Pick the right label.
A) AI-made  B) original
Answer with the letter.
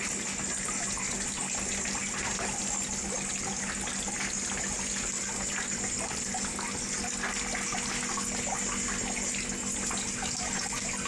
B